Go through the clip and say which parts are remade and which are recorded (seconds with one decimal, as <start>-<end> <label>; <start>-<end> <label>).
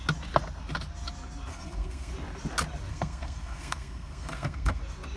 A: 0.0-1.5 recorded; 1.5-2.1 remade; 2.1-2.9 recorded; 2.9-4.8 remade; 4.8-5.2 recorded